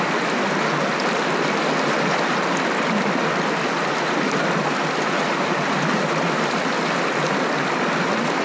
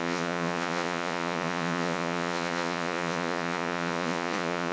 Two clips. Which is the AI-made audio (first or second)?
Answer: second